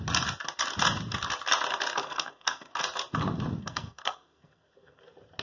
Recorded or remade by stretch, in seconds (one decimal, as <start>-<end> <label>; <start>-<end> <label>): 0.0-2.0 recorded; 2.0-2.7 remade; 2.7-3.6 recorded; 3.6-5.0 remade; 5.0-5.4 recorded